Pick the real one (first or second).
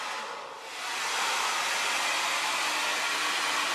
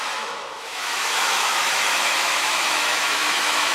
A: first